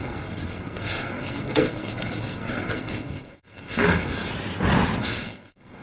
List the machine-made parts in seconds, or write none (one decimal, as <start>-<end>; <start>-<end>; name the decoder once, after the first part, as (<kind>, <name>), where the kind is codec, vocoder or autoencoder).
0.0-4.3 (codec, SNAC); 5.0-5.8